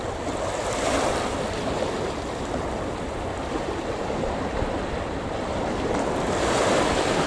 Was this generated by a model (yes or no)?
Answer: yes